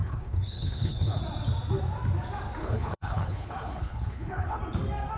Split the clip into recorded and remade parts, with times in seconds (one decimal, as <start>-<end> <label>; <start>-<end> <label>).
0.0-1.2 remade; 1.2-2.6 recorded; 2.6-4.6 remade; 4.6-5.2 recorded